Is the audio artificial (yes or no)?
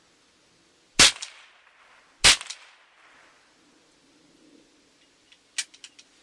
no